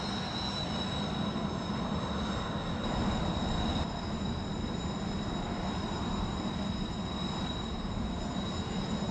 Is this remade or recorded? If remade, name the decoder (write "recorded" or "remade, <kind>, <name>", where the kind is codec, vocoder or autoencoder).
recorded